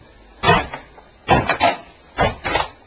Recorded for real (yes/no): yes